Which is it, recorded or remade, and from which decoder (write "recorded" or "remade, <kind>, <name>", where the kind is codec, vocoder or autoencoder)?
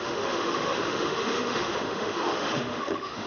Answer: remade, autoencoder, DAC-VAE